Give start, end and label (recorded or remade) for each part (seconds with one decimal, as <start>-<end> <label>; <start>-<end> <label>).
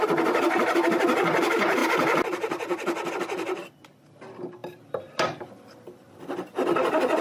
0.0-7.2 recorded